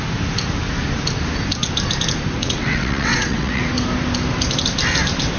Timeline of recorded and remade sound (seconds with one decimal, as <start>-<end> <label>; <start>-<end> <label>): 0.0-2.4 recorded; 2.4-3.6 remade; 3.6-5.4 recorded